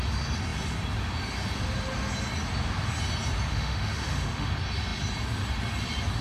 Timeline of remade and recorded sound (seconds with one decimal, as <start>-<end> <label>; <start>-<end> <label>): 0.0-3.5 recorded; 3.5-4.5 remade; 4.5-6.2 recorded